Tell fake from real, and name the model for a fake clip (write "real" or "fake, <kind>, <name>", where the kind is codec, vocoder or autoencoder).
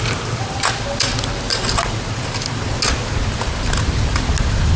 real